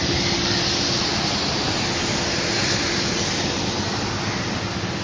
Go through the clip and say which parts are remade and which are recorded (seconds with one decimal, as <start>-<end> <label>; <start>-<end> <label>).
0.0-5.0 recorded